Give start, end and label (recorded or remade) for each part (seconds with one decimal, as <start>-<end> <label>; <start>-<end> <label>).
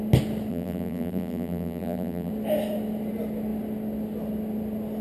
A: 0.0-0.5 recorded; 0.5-2.3 remade; 2.3-5.0 recorded